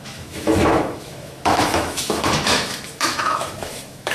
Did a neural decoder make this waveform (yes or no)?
yes